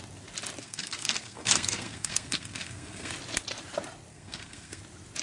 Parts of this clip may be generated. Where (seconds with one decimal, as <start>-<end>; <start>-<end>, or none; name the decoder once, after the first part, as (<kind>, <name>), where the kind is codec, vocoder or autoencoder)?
0.6-3.1 (codec, SNAC); 4.1-4.8